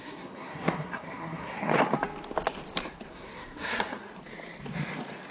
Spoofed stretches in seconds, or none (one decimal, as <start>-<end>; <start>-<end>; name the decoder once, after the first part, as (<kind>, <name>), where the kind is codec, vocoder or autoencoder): 0.0-1.7 (codec, SNAC); 3.1-4.1